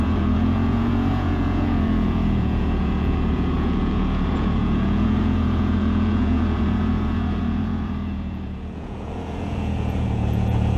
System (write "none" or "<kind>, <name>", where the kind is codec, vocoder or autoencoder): vocoder, Vocos